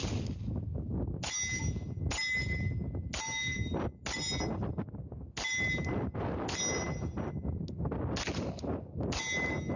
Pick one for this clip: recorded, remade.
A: recorded